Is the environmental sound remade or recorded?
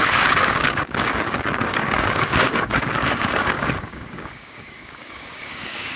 remade